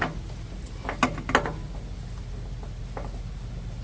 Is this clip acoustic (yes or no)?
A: yes